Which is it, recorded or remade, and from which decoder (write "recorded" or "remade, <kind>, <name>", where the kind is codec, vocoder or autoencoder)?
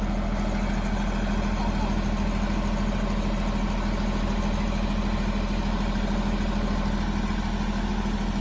recorded